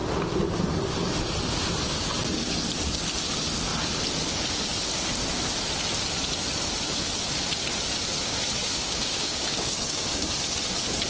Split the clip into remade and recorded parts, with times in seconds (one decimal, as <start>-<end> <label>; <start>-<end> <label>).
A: 0.0-8.6 recorded; 8.6-10.3 remade; 10.3-11.1 recorded